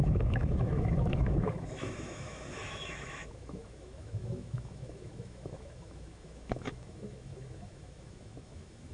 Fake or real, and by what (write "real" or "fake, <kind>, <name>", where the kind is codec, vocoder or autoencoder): fake, autoencoder, DAC-VAE